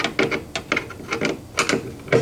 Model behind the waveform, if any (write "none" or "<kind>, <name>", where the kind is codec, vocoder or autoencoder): none